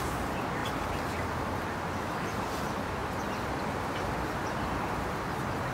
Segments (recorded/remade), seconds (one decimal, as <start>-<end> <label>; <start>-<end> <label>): 0.0-5.7 recorded